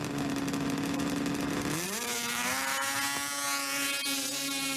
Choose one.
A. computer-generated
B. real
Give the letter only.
B